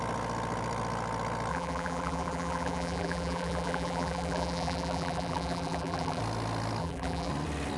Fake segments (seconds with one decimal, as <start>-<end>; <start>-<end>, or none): 1.5-6.2; 6.8-7.3